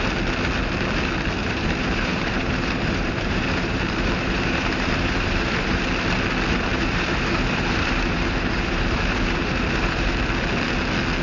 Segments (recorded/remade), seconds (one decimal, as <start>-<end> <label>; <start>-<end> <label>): 0.0-1.4 recorded; 1.4-5.8 remade; 5.8-6.7 recorded; 6.7-10.1 remade; 10.1-11.2 recorded